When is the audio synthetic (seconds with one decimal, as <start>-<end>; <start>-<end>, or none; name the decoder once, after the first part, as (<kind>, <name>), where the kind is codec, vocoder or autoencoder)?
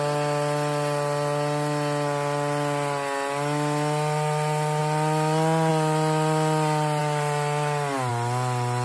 none